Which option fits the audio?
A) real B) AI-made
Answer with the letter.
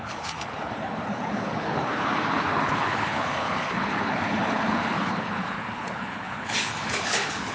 B